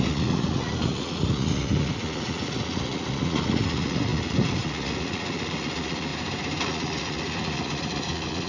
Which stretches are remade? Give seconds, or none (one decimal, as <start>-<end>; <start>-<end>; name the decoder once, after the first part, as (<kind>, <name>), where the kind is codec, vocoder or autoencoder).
0.0-6.1 (vocoder, Vocos); 6.6-8.5